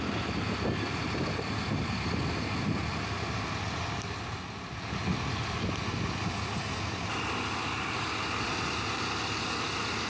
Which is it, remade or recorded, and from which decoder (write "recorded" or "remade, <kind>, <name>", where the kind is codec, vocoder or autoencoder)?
recorded